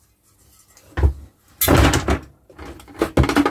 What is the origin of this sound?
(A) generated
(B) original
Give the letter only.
B